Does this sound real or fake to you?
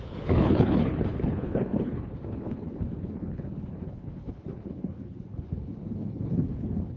fake